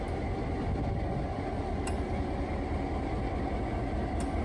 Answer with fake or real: real